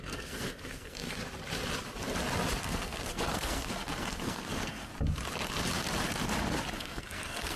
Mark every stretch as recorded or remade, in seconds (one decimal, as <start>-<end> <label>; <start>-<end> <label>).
0.0-1.2 remade; 1.2-2.6 recorded; 2.6-4.9 remade; 4.9-6.8 recorded; 6.8-7.6 remade